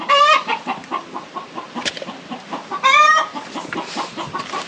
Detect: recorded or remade remade